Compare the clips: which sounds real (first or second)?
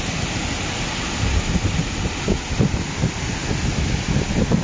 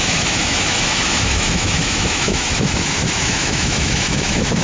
first